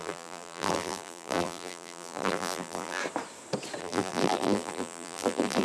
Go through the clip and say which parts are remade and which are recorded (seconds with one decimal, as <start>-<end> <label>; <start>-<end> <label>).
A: 0.0-3.0 remade; 3.0-3.8 recorded; 3.8-5.6 remade